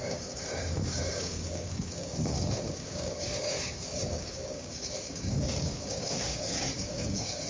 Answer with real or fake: fake